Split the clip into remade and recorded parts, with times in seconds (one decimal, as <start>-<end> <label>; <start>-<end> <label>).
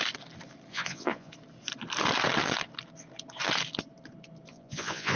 0.0-0.7 recorded; 0.7-1.3 remade; 1.3-4.5 recorded; 4.5-5.2 remade